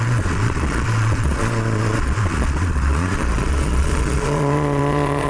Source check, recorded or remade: remade